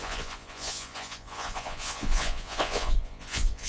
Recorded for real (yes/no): no